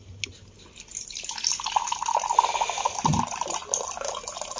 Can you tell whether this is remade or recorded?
recorded